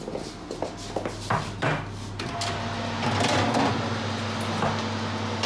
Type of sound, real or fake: real